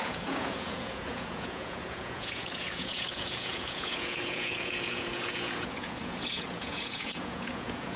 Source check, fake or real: fake